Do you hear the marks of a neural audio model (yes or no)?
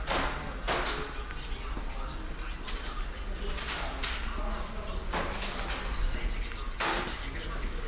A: no